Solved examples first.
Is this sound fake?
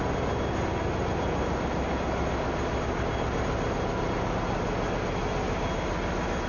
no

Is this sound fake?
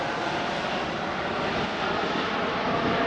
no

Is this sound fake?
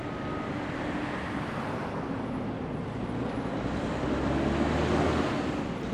no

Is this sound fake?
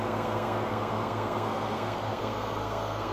yes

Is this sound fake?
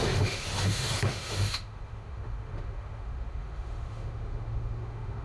yes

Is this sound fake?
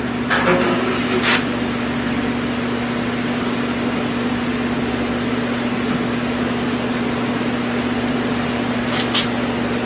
no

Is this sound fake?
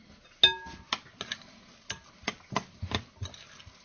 no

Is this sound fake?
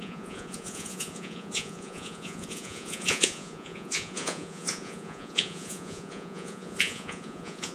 yes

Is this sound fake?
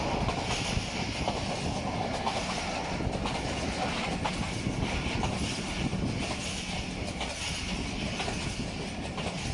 no